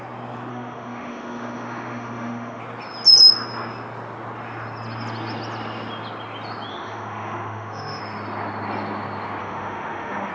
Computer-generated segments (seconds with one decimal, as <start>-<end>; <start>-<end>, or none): 0.5-2.6; 6.7-8.0; 9.4-10.3